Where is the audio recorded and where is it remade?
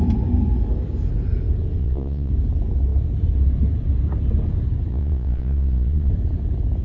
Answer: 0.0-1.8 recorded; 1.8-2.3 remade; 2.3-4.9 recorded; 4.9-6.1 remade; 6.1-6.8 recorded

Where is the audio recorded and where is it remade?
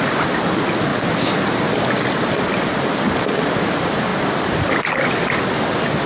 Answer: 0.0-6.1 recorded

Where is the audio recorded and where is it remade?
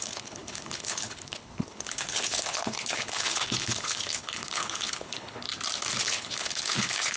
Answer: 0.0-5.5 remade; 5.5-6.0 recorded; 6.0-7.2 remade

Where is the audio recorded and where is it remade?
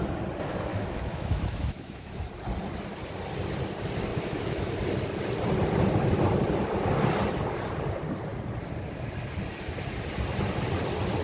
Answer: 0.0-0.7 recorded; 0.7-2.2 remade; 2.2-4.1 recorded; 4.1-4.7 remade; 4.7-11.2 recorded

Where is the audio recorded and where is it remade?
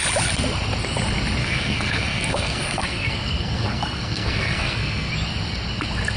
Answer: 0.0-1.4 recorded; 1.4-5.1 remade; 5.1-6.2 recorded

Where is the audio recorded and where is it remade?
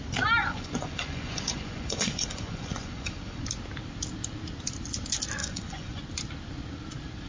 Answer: 0.0-0.4 recorded; 0.4-3.4 remade; 3.4-5.4 recorded; 5.4-6.0 remade; 6.0-7.3 recorded